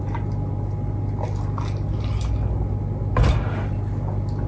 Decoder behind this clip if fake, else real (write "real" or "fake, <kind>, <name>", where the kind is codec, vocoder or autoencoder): real